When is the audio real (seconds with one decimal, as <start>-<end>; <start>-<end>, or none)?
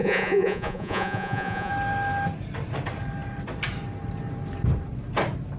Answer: 1.7-5.6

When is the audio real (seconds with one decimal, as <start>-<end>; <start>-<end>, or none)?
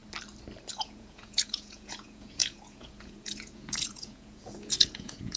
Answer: 0.0-0.7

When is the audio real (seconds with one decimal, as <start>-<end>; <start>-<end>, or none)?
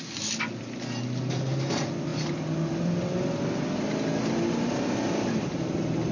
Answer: 0.0-6.1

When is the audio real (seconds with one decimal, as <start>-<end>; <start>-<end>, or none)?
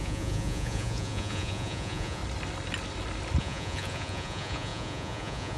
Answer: 2.2-3.4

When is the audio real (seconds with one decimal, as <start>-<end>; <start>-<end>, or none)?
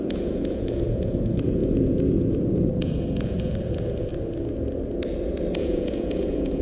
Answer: 4.1-5.6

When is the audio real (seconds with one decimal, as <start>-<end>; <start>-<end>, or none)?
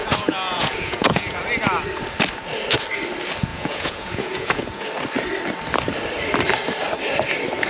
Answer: 1.4-3.5; 4.9-7.7